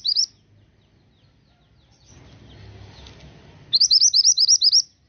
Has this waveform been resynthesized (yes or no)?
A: no